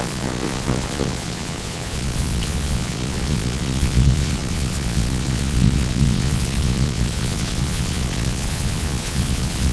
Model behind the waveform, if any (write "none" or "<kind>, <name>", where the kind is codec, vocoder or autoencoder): vocoder, Vocos